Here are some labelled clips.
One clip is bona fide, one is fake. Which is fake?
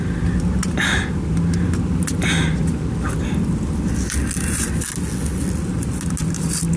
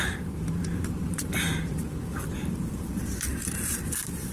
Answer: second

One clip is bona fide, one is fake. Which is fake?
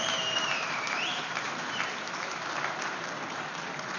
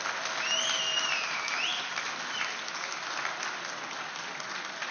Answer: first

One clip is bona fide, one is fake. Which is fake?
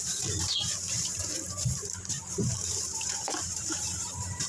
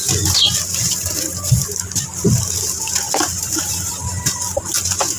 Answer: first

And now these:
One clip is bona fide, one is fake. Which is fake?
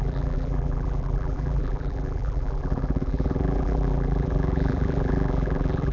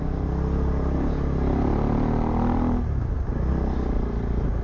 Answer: first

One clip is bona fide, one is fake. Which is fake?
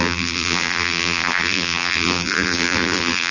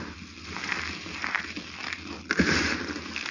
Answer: first